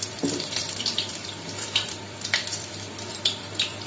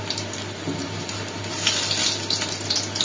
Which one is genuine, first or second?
second